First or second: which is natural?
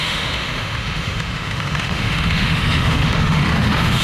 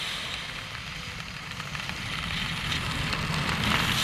second